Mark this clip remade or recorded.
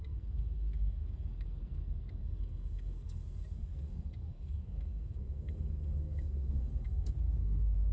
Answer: remade